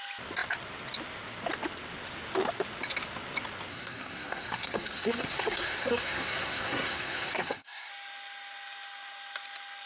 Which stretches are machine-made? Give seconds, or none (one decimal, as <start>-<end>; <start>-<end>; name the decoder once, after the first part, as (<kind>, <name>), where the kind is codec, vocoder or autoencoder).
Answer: 3.7-7.9 (codec, SNAC)